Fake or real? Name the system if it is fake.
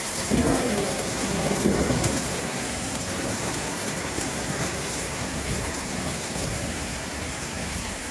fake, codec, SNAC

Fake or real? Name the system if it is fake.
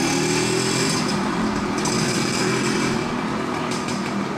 real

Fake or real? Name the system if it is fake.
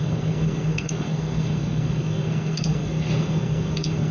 fake, codec, SNAC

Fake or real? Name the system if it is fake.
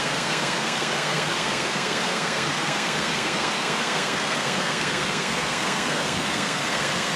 fake, codec, SNAC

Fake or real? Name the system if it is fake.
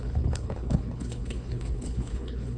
fake, codec, HILCodec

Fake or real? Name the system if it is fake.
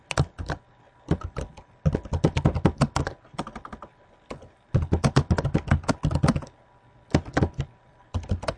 real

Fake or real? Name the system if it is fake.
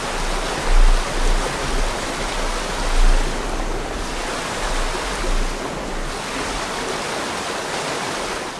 real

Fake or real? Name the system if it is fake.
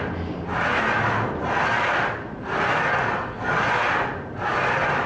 real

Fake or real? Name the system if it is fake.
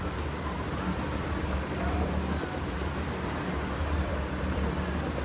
real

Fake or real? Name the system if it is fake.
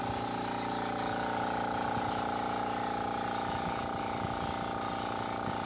real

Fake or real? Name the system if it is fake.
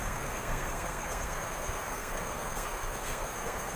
fake, codec, SNAC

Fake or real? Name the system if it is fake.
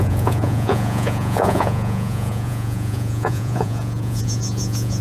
fake, vocoder, Vocos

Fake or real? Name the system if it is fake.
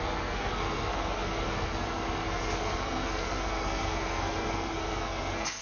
fake, codec, SNAC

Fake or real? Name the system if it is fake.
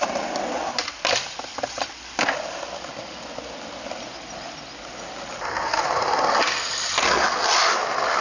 real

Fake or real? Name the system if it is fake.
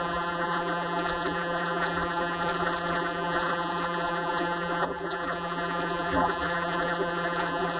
fake, vocoder, BigVGAN v2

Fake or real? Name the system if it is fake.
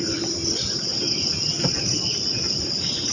real